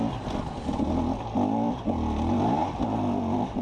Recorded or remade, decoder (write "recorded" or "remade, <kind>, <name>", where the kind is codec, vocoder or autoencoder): recorded